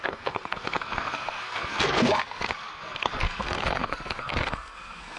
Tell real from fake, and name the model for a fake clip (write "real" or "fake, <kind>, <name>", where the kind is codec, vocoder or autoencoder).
fake, codec, SNAC